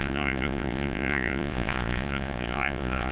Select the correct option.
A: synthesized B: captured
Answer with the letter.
A